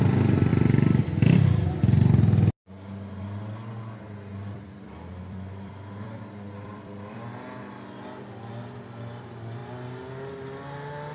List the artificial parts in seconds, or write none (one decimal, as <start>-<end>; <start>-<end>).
4.3-7.2